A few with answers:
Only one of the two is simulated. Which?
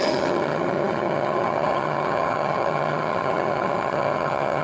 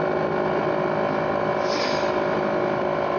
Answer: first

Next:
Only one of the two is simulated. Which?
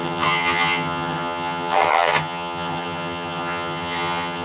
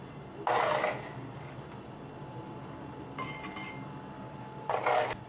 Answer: first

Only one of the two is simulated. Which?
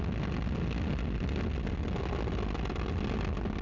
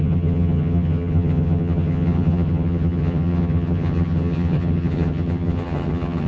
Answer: second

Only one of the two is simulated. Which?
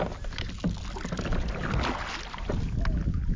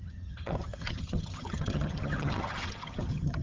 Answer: second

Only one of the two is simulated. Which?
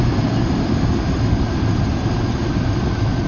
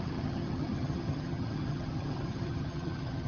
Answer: second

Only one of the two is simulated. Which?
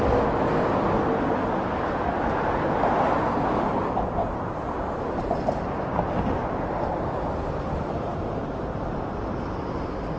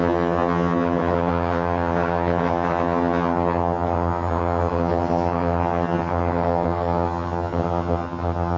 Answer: second